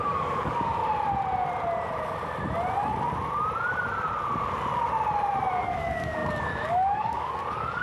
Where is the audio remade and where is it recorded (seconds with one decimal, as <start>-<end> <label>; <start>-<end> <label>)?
0.0-0.8 remade; 0.8-5.5 recorded; 5.5-7.8 remade